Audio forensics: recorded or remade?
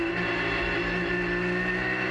recorded